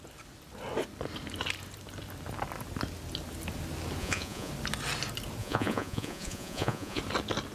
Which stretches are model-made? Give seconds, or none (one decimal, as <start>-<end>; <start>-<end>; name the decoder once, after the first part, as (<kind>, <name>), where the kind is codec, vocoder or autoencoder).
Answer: 4.0-4.5 (vocoder, Vocos); 5.4-7.0